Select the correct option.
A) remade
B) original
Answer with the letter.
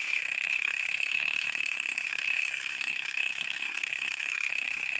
A